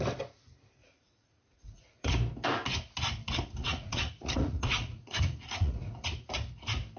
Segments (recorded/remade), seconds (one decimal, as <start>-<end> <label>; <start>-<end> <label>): 0.0-0.8 recorded; 0.8-2.1 remade; 2.1-3.6 recorded; 3.6-6.3 remade; 6.3-7.0 recorded